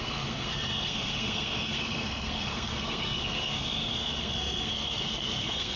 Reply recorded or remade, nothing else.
remade